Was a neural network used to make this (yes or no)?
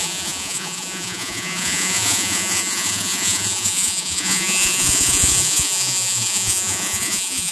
yes